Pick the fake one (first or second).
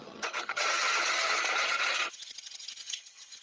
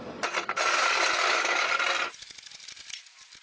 first